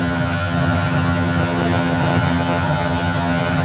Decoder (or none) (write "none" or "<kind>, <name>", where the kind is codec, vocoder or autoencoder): vocoder, HiFi-GAN